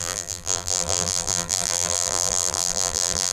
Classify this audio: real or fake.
fake